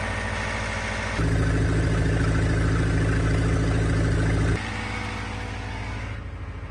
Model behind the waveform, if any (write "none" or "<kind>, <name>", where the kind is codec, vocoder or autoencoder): none